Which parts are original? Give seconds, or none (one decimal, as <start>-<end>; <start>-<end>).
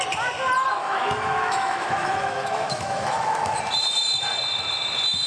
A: 0.0-0.8; 3.6-5.3